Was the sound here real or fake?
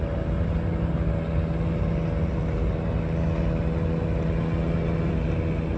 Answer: real